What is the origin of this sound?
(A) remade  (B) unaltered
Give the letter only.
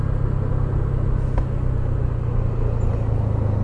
B